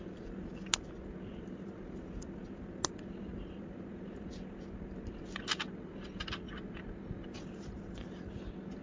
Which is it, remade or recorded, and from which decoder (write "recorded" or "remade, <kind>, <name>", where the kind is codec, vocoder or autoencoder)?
recorded